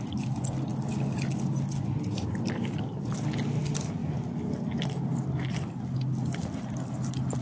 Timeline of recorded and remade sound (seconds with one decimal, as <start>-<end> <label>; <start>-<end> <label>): 0.0-7.4 recorded

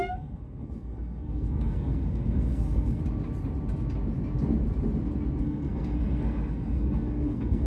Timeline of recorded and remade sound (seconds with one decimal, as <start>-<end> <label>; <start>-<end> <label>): 0.0-3.0 remade; 3.0-5.4 recorded; 5.4-7.7 remade

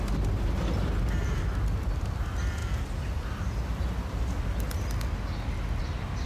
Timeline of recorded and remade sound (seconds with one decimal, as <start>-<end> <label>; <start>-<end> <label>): 0.0-6.3 recorded